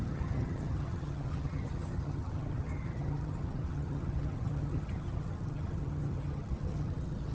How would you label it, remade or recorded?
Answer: remade